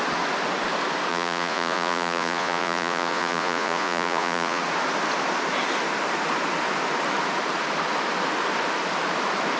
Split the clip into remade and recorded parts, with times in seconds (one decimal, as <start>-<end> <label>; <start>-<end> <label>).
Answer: 0.0-1.1 recorded; 1.1-4.6 remade; 4.6-9.6 recorded